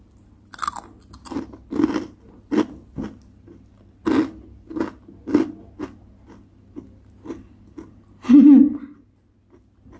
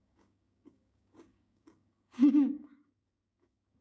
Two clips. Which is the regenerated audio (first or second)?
second